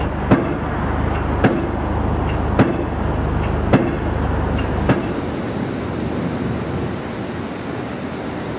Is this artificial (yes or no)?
no